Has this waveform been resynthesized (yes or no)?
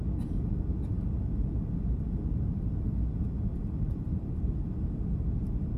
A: no